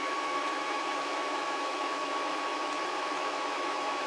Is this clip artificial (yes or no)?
yes